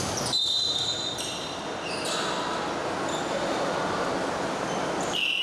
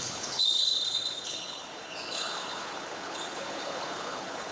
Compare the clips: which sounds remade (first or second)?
second